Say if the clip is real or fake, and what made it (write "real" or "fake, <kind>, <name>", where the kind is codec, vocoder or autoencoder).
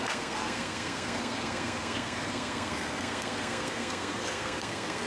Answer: fake, codec, SNAC